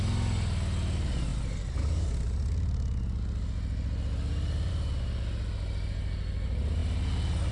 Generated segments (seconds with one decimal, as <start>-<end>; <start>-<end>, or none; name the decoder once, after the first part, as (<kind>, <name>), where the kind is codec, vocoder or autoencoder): none

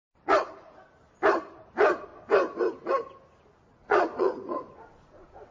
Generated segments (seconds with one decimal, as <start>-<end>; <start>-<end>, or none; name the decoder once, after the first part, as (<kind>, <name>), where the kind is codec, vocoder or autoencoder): 3.8-4.7 (vocoder, Vocos)

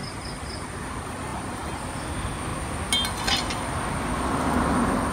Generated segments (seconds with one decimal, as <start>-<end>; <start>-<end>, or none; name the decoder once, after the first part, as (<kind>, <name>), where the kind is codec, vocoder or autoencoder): none

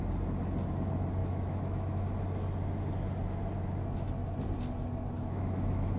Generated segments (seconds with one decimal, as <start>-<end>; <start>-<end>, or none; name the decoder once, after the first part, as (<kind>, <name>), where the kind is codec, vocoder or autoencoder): 1.2-2.0 (autoencoder, DAC-VAE); 5.2-6.0

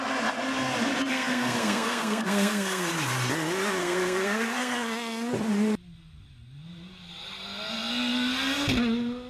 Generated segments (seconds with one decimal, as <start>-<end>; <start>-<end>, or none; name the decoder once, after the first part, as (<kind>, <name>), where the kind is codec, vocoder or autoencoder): 1.1-2.9 (codec, SNAC); 3.8-5.3